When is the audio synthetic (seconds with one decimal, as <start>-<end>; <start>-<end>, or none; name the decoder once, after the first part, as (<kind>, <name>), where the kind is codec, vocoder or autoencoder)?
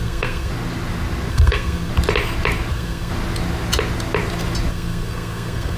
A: 0.0-0.5 (codec, SNAC); 1.3-1.9; 2.7-3.1; 4.7-5.8